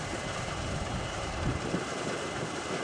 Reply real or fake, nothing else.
real